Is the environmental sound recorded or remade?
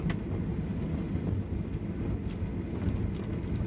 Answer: recorded